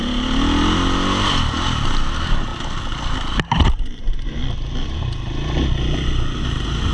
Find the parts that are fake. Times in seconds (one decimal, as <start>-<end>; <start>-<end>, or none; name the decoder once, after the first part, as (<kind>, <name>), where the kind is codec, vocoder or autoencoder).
none